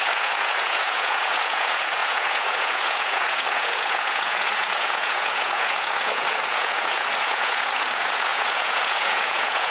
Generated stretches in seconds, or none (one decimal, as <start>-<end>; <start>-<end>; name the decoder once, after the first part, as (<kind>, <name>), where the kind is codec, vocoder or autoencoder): 0.0-9.7 (vocoder, Vocos)